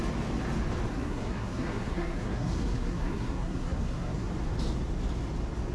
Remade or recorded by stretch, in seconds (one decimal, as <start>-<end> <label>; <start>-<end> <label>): 0.0-0.9 recorded; 0.9-4.3 remade; 4.3-5.7 recorded